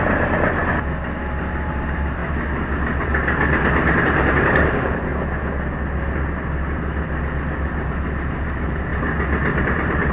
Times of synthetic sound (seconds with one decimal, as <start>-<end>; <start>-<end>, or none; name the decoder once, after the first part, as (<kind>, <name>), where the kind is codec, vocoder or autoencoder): 0.0-0.6 (vocoder, BigVGAN v2); 1.4-2.2; 4.0-5.1; 7.7-8.9; 9.6-10.1